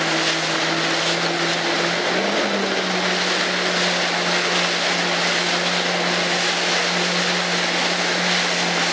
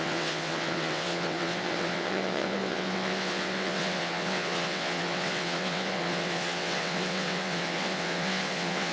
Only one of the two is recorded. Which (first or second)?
first